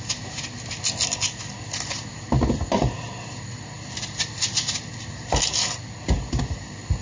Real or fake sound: real